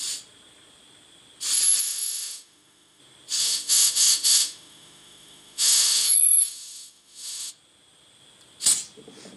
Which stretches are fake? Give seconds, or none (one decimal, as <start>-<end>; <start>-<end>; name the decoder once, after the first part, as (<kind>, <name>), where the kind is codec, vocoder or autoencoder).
1.8-3.0 (autoencoder, DAC-VAE); 3.4-7.5